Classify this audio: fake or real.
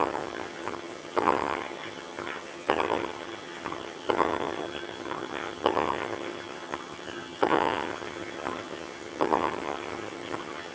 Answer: fake